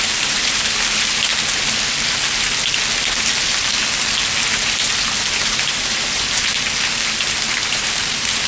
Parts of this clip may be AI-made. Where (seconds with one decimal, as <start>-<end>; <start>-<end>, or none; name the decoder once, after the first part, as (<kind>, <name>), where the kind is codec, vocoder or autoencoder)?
0.0-1.3 (vocoder, BigVGAN v2); 5.4-6.5; 7.7-8.5